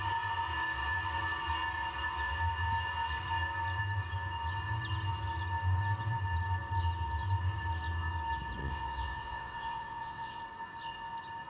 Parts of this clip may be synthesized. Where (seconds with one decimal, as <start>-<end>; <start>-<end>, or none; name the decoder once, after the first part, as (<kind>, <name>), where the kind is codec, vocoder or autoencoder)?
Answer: 8.6-10.4 (vocoder, WaveNeXt)